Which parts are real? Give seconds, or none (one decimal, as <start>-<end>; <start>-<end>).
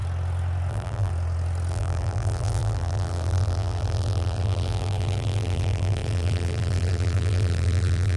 0.0-0.7; 1.1-1.7